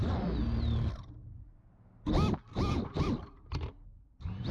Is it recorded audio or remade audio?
recorded